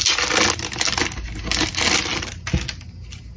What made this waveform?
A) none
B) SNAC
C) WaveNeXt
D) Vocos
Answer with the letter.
A